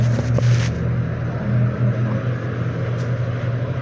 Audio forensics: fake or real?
real